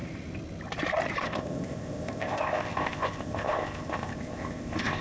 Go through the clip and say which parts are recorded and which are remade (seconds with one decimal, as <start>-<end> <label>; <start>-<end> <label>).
0.0-1.2 recorded; 1.2-5.0 remade